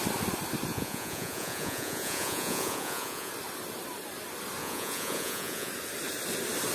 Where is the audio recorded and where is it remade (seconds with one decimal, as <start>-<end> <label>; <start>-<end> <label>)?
0.0-0.7 recorded; 0.7-3.3 remade; 3.3-4.6 recorded; 4.6-5.7 remade; 5.7-6.7 recorded